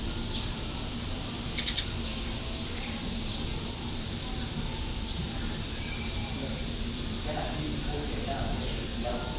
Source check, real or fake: fake